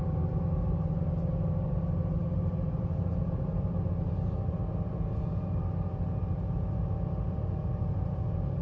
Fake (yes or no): yes